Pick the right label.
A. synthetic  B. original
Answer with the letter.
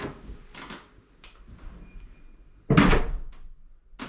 B